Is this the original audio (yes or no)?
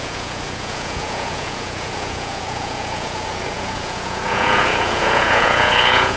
no